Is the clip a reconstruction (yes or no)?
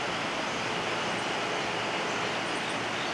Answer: no